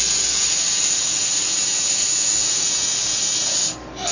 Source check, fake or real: real